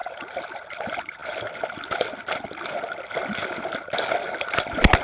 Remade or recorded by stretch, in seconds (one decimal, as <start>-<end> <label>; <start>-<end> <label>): 0.0-5.0 recorded